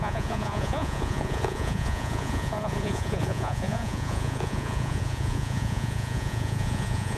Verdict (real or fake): fake